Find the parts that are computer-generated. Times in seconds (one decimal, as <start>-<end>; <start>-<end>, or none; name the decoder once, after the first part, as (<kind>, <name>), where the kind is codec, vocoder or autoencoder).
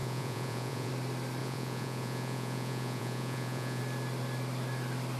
0.0-0.9 (vocoder, Vocos); 1.4-3.8